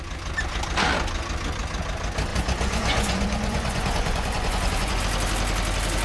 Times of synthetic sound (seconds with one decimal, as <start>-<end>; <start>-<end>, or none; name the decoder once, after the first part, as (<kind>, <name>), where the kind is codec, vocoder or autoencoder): 2.3-5.0 (vocoder, Vocos)